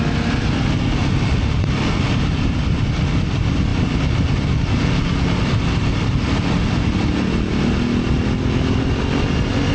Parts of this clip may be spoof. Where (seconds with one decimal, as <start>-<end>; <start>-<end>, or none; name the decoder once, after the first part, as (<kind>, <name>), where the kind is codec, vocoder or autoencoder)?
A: none